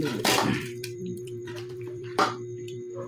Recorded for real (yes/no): no